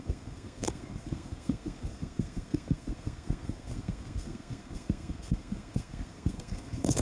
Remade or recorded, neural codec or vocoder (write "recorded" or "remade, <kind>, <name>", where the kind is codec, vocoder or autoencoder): remade, codec, SNAC